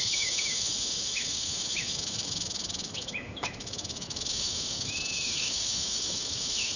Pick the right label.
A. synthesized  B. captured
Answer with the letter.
A